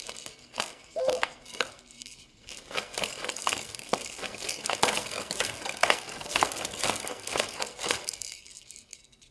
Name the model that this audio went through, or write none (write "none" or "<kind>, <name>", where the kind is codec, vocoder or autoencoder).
codec, SNAC